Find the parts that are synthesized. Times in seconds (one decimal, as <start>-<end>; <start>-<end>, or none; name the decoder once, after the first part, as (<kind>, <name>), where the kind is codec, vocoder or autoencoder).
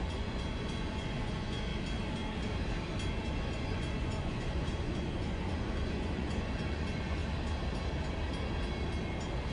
0.0-1.7 (vocoder, Vocos); 3.1-7.2